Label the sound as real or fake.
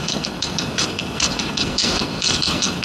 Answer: fake